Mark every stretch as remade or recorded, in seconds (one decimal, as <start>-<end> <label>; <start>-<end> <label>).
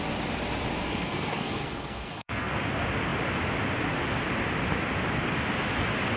0.0-0.8 recorded; 0.8-2.6 remade; 2.6-6.2 recorded